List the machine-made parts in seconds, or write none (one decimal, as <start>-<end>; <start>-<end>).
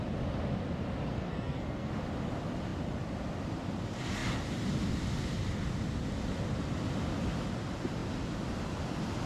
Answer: 1.1-1.9